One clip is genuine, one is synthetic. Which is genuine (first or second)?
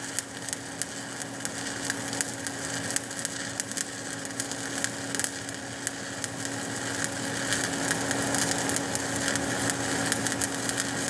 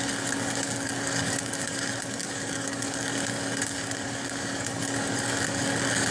first